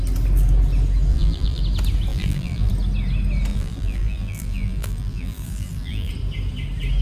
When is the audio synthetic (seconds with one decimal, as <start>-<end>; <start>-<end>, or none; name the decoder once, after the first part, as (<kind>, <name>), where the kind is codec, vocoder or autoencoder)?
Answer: 1.1-1.6 (vocoder, BigVGAN v2); 2.1-2.7; 3.5-6.1